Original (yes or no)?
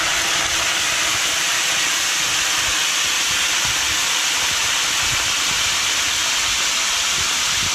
yes